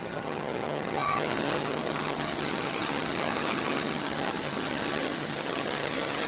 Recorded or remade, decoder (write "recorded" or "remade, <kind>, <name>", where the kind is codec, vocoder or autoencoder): remade, vocoder, HiFi-GAN